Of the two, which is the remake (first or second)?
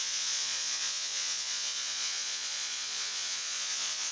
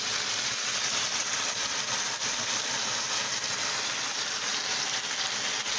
first